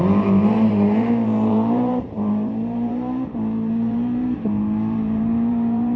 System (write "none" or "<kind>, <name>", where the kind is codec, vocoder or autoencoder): vocoder, BigVGAN v2